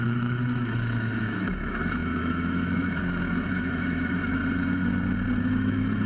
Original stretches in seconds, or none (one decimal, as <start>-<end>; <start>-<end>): 4.4-5.4